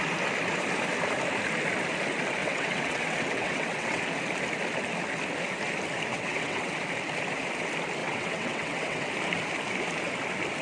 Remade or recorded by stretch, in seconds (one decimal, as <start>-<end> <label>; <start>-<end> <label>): 0.0-2.4 recorded; 2.4-4.0 remade; 4.0-6.1 recorded; 6.1-6.7 remade; 6.7-8.0 recorded; 8.0-9.1 remade; 9.1-10.6 recorded